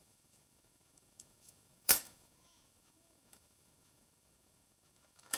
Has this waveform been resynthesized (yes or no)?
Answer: yes